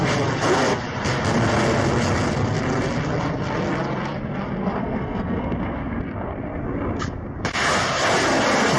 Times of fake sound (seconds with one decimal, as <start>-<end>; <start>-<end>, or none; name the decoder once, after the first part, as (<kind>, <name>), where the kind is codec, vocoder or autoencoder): 4.8-6.0 (codec, SNAC)